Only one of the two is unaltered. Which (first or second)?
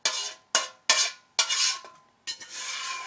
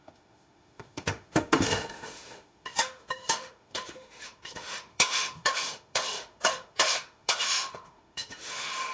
first